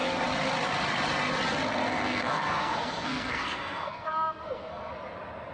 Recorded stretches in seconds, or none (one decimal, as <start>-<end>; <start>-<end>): 0.0-1.8; 4.9-5.5